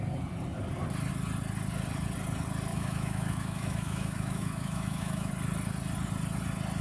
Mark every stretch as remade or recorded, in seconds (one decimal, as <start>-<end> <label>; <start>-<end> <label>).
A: 0.0-2.7 recorded; 2.7-5.3 remade; 5.3-6.8 recorded